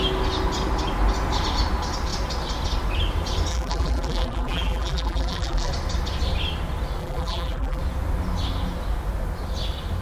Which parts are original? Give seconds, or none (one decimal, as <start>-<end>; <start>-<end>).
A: 0.0-3.5; 5.7-7.0; 7.8-10.0